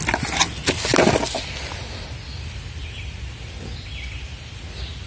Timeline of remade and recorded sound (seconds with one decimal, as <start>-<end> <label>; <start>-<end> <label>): 0.0-5.1 recorded